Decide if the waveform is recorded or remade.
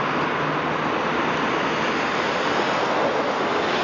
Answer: recorded